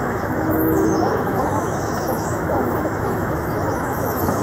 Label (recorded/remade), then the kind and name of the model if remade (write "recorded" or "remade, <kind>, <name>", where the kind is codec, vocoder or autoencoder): remade, autoencoder, DAC-VAE